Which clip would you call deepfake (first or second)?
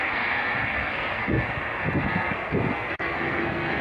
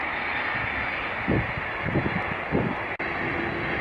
first